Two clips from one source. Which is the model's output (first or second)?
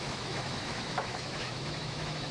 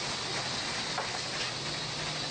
first